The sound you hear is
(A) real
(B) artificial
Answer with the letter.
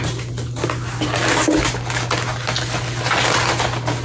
A